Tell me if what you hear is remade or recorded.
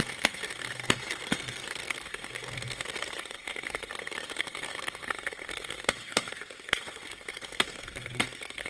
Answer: remade